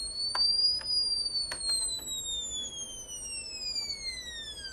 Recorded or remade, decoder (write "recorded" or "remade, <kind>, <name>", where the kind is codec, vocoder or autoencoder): recorded